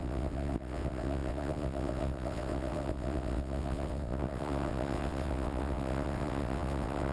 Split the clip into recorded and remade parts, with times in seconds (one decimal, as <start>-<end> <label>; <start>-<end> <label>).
0.0-7.1 remade

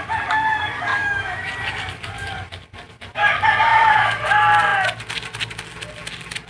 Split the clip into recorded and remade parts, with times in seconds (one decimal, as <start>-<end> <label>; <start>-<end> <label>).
0.0-0.9 recorded; 0.9-1.5 remade; 1.5-3.7 recorded; 3.7-4.2 remade; 4.2-6.5 recorded

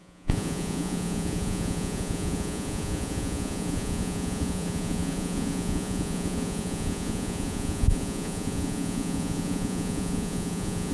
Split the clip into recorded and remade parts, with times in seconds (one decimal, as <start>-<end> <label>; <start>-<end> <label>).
0.0-10.9 remade